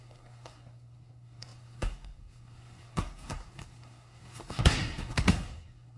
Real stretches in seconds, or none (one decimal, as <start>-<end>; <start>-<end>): none